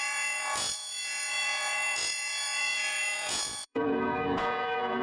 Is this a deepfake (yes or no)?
yes